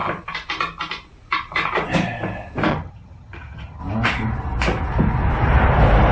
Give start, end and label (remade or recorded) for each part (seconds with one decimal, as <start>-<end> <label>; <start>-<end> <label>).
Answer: 0.0-2.7 recorded; 2.7-3.8 remade; 3.8-6.1 recorded